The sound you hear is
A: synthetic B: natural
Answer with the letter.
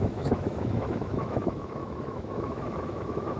A